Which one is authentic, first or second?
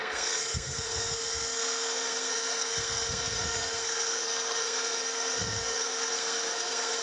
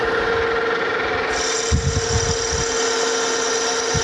second